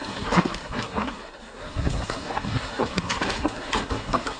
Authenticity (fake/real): fake